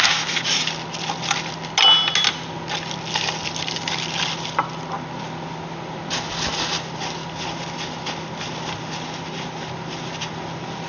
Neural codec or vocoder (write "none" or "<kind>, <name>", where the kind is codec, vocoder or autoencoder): none